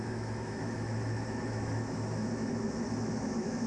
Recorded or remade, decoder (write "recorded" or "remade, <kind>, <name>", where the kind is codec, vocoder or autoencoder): remade, autoencoder, DAC-VAE